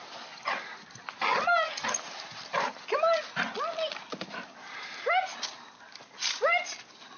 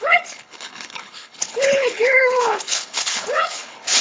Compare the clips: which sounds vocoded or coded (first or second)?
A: second